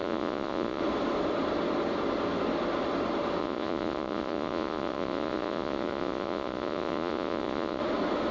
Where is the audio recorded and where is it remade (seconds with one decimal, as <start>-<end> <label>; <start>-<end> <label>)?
0.0-0.8 remade; 0.8-3.4 recorded; 3.4-7.8 remade; 7.8-8.3 recorded